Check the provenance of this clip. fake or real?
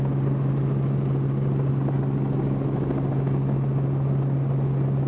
real